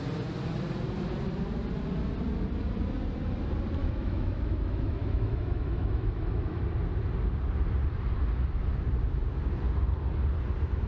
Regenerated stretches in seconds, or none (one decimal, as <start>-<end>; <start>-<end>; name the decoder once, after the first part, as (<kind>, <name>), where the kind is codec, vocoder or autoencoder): 3.8-6.6 (autoencoder, DAC-VAE)